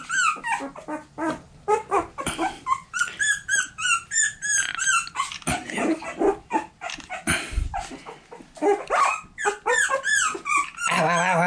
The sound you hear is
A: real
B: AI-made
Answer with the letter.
A